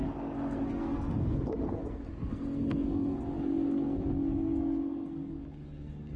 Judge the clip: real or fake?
fake